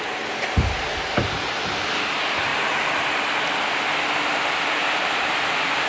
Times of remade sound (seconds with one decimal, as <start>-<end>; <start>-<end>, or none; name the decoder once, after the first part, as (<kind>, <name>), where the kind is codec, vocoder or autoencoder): 0.0-2.5 (vocoder, BigVGAN v2); 4.7-5.9